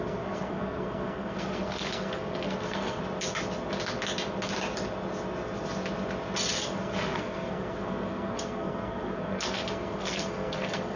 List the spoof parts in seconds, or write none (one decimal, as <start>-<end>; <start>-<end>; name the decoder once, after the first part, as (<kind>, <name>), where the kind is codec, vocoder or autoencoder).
0.0-3.0 (codec, SNAC); 6.5-11.0

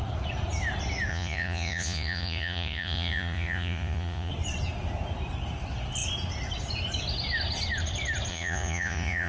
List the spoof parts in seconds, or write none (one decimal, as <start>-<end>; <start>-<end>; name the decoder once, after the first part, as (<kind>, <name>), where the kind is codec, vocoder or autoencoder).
1.1-4.3 (vocoder, Vocos); 8.3-9.3

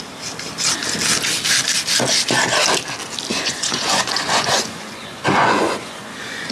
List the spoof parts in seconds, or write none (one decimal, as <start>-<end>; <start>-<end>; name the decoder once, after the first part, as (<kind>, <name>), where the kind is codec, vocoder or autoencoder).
3.3-6.5 (vocoder, Vocos)

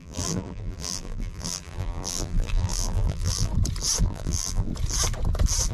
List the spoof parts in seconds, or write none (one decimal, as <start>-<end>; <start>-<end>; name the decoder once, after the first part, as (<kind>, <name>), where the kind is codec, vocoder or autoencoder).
0.0-3.5 (vocoder, BigVGAN v2); 4.0-4.7

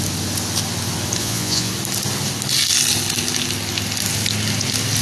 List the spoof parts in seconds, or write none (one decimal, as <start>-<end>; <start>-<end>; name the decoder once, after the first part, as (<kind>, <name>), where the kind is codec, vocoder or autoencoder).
1.2-1.7 (vocoder, Vocos)

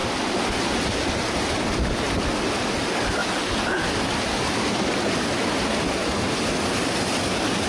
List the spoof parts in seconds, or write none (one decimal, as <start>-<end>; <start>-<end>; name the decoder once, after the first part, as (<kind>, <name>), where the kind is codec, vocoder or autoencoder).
none

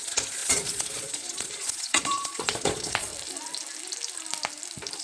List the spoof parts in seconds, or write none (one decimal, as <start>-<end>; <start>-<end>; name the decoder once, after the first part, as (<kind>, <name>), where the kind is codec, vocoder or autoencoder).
0.0-3.1 (vocoder, Vocos)